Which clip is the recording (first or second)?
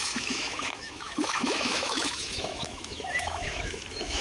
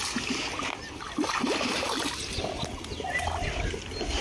second